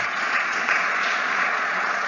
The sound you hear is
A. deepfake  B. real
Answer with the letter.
A